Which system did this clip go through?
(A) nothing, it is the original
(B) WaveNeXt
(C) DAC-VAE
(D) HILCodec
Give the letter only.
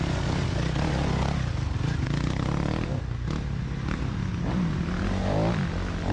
A